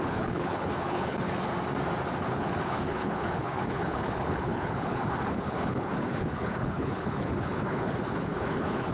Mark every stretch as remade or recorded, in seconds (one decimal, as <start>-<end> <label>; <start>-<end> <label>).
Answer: 0.0-1.5 remade; 1.5-2.2 recorded; 2.2-8.9 remade